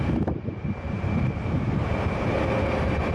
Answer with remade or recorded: recorded